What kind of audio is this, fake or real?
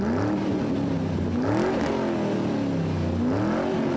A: real